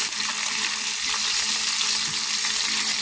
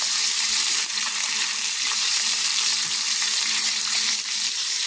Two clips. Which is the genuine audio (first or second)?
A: first